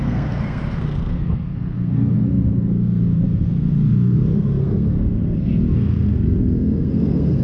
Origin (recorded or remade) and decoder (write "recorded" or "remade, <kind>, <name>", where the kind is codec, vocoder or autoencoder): remade, codec, SNAC